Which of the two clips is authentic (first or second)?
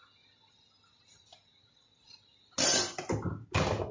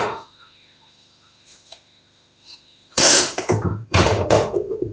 first